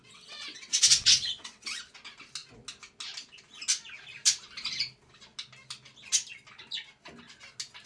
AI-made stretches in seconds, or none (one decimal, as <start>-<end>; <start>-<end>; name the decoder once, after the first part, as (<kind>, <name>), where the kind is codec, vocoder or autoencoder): 0.0-1.8 (vocoder, WaveNeXt)